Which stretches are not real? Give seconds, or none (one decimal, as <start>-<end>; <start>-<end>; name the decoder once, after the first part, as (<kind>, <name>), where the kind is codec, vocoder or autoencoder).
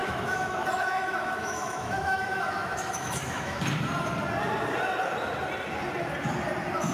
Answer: 0.0-3.6 (autoencoder, DAC-VAE)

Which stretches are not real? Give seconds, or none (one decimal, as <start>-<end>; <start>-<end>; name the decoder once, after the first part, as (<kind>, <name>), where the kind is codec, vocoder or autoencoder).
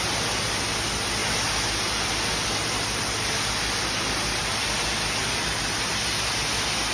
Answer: none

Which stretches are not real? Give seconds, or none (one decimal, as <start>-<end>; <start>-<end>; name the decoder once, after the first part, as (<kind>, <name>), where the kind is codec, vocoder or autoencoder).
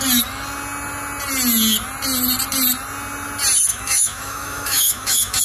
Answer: 3.7-5.4 (autoencoder, DAC-VAE)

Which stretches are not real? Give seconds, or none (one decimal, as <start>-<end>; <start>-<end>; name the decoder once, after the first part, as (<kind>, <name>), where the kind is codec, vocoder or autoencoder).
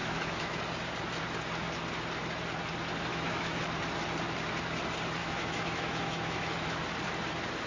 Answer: 0.0-0.6 (autoencoder, DAC-VAE); 3.1-3.6; 5.2-6.8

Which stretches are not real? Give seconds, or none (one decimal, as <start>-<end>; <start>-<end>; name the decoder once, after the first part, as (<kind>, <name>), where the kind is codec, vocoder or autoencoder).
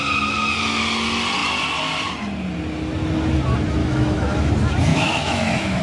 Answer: 3.8-4.5 (autoencoder, DAC-VAE); 4.9-5.8